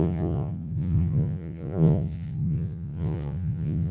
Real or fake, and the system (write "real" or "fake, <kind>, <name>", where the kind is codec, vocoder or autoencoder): fake, vocoder, Vocos